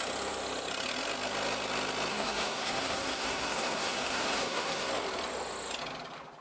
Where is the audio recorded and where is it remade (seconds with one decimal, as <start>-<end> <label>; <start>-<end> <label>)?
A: 0.0-2.1 recorded; 2.1-4.9 remade; 4.9-6.4 recorded

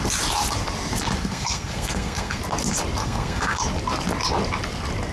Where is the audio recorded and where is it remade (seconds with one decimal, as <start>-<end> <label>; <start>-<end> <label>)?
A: 0.0-1.2 recorded; 1.2-2.4 remade; 2.4-3.0 recorded; 3.0-3.6 remade; 3.6-5.1 recorded

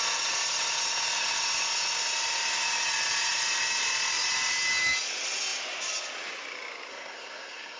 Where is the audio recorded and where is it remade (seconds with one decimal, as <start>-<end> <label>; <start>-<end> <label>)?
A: 0.0-6.9 recorded; 6.9-7.8 remade

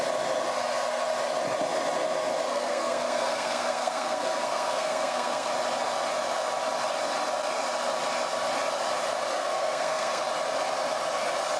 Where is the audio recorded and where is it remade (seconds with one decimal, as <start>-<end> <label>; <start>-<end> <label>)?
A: 0.0-2.5 recorded; 2.5-5.5 remade; 5.5-9.3 recorded; 9.3-10.2 remade; 10.2-11.6 recorded

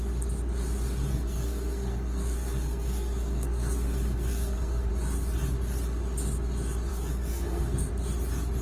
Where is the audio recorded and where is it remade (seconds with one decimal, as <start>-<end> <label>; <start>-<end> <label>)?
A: 0.0-1.1 recorded; 1.1-4.9 remade; 4.9-6.9 recorded; 6.9-7.9 remade; 7.9-8.6 recorded

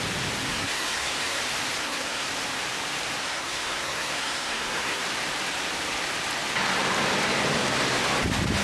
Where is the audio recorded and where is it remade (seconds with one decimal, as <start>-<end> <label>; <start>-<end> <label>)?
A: 0.0-0.5 recorded; 0.5-1.4 remade; 1.4-1.8 recorded; 1.8-2.3 remade; 2.3-3.2 recorded; 3.2-5.0 remade; 5.0-8.6 recorded

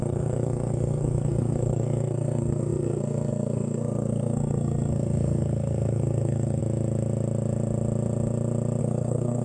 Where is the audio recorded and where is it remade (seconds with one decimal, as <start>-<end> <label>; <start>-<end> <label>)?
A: 0.0-6.6 remade; 6.6-8.8 recorded; 8.8-9.4 remade